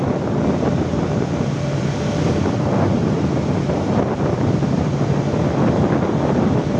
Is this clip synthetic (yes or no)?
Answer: yes